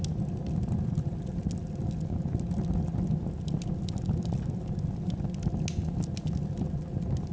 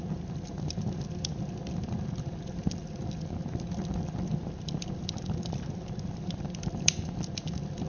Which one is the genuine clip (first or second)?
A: first